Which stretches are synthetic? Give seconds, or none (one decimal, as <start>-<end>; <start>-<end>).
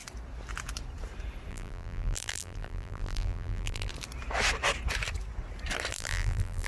1.5-3.9; 5.9-6.7